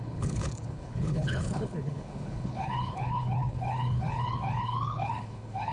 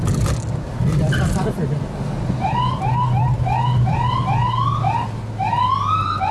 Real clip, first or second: second